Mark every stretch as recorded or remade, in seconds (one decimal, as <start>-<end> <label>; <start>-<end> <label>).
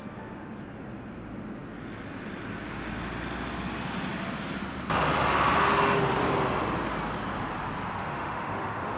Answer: 0.0-8.0 recorded; 8.0-9.0 remade